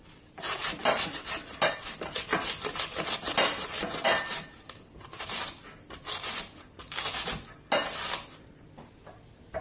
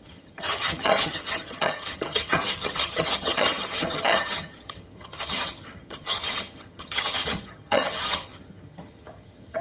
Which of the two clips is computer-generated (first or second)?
second